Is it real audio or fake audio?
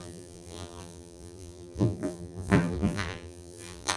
fake